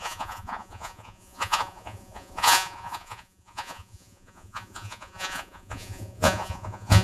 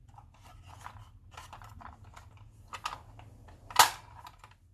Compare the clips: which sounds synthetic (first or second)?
first